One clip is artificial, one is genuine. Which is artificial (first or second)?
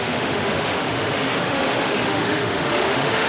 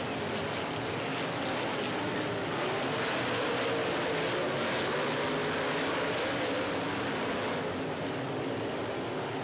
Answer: first